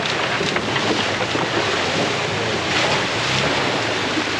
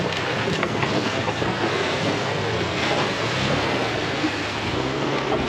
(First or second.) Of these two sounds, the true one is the first